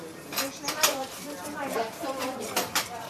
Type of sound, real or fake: fake